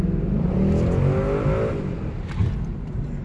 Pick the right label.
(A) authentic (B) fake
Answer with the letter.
A